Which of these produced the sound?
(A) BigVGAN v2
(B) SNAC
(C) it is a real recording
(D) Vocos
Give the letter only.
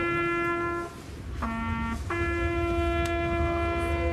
C